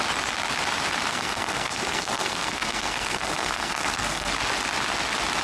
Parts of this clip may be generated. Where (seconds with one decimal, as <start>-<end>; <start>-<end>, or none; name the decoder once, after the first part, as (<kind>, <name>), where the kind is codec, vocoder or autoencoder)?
1.1-4.3 (codec, SNAC)